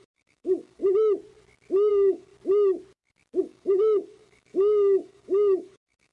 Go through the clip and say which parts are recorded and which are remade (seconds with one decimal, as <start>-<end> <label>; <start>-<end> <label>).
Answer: 0.0-0.8 remade; 0.8-1.9 recorded; 1.9-2.3 remade; 2.3-3.4 recorded; 3.4-6.1 remade